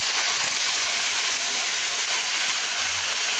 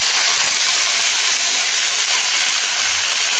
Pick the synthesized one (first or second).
first